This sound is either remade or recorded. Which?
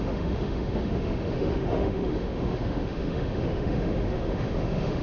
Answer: remade